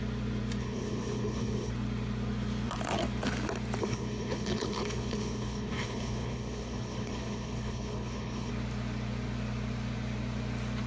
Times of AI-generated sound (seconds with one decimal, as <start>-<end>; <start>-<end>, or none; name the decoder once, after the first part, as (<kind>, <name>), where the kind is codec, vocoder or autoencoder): 0.6-1.7 (codec, HILCodec); 3.8-8.5